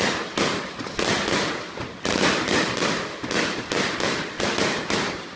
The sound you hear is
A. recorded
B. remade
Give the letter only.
A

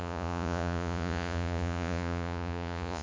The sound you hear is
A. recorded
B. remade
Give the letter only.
B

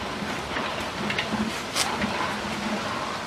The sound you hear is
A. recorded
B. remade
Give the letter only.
A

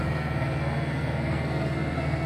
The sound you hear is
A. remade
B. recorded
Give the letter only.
A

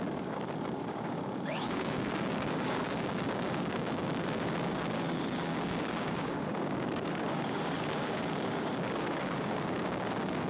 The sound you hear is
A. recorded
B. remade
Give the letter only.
B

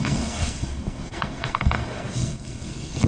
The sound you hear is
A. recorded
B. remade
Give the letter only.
B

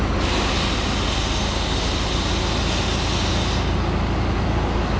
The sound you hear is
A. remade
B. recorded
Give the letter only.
B